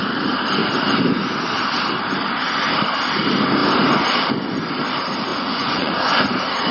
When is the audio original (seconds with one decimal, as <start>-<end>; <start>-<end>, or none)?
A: 0.0-5.3; 6.2-6.7